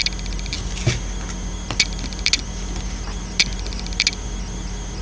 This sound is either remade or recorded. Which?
recorded